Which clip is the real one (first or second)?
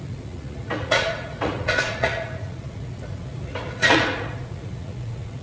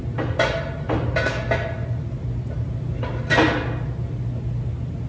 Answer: second